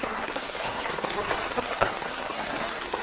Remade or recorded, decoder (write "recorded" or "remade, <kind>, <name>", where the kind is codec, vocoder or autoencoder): remade, codec, SNAC